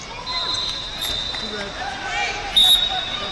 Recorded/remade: recorded